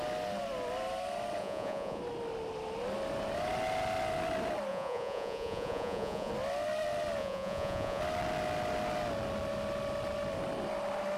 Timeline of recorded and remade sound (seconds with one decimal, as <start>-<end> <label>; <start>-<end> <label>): 0.0-1.4 recorded; 1.4-2.0 remade; 2.0-4.7 recorded; 4.7-6.3 remade; 6.3-7.2 recorded; 7.2-8.0 remade; 8.0-11.2 recorded